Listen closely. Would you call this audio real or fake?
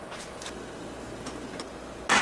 real